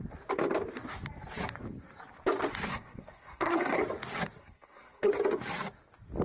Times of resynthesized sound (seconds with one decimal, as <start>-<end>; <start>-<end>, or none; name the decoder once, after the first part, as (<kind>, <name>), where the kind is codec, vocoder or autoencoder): 2.7-3.8 (codec, SNAC); 4.4-5.1